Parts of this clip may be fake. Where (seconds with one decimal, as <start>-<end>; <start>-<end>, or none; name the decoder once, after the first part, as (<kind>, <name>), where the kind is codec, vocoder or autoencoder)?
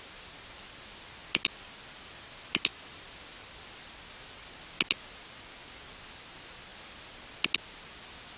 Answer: none